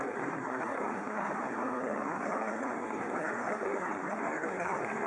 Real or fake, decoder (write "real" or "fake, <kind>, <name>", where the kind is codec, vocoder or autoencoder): fake, codec, SNAC